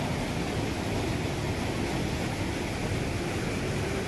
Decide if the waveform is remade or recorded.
recorded